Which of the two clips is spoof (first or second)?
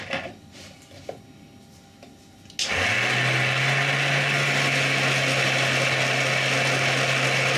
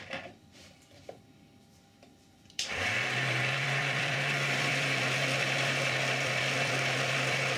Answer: second